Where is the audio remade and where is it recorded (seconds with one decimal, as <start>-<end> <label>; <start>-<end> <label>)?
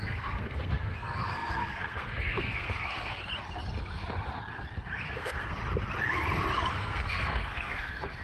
0.0-3.2 remade; 3.2-5.0 recorded; 5.0-5.6 remade; 5.6-6.7 recorded; 6.7-8.2 remade